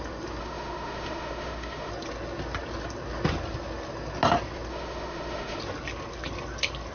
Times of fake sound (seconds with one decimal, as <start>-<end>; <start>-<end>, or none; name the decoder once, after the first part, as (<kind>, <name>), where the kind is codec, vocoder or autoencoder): 0.4-1.9 (autoencoder, DAC-VAE); 4.7-5.6